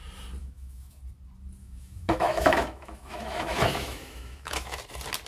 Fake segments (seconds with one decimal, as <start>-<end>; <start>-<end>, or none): 0.4-1.0; 1.6-4.8